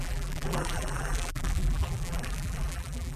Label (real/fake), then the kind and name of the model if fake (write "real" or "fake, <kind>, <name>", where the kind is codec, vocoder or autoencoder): fake, vocoder, BigVGAN v2